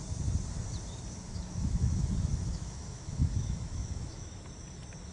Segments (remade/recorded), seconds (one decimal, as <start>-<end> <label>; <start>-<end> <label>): 0.0-1.3 recorded; 1.3-4.4 remade; 4.4-5.1 recorded